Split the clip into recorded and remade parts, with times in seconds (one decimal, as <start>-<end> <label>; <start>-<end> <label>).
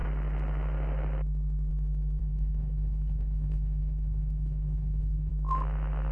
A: 0.0-2.2 recorded; 2.2-5.3 remade; 5.3-6.1 recorded